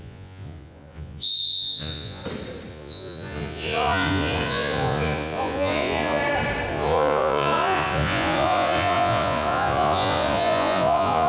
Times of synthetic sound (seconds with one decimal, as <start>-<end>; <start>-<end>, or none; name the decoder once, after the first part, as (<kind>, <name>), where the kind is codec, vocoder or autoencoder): 0.0-2.2 (vocoder, Vocos); 2.7-6.2; 6.7-11.3